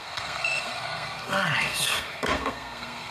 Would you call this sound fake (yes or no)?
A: yes